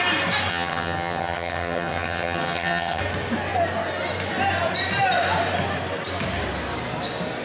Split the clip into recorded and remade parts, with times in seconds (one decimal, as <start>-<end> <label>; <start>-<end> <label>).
0.0-0.5 recorded; 0.5-3.0 remade; 3.0-7.4 recorded